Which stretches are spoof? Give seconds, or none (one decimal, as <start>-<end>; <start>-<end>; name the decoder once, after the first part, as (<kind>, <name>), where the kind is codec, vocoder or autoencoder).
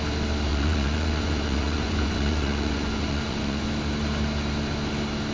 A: 0.5-3.7 (vocoder, Vocos)